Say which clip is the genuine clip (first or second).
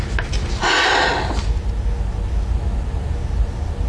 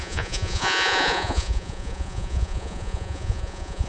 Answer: first